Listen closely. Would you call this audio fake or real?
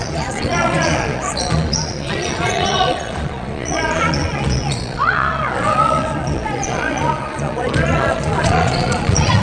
fake